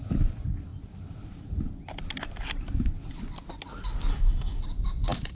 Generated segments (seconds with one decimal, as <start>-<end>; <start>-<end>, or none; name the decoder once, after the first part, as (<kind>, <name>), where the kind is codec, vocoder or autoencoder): 4.1-4.6 (codec, SNAC)